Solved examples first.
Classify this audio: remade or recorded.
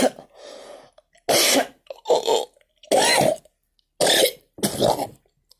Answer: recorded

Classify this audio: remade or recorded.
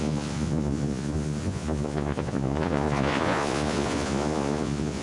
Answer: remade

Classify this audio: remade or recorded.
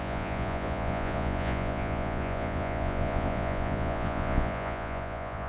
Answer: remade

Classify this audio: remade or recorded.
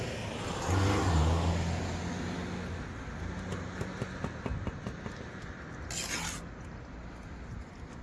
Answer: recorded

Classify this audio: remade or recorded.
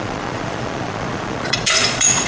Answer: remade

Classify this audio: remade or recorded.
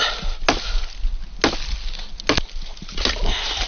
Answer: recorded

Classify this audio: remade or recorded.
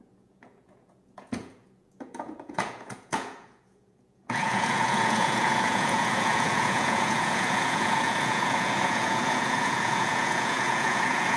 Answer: remade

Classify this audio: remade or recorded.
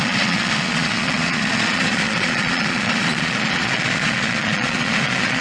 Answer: remade